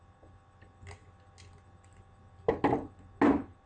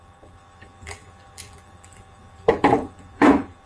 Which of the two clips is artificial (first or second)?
second